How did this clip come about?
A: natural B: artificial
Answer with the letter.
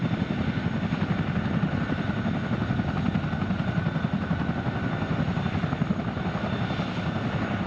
A